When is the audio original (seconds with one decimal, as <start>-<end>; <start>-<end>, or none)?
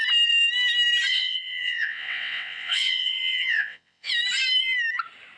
0.0-1.1; 4.1-5.4